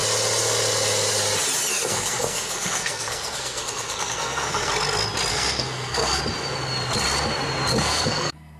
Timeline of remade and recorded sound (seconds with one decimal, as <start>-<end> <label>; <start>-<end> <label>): 0.0-1.7 recorded; 1.7-4.7 remade; 4.7-5.3 recorded; 5.3-6.2 remade; 6.2-7.7 recorded; 7.7-8.6 remade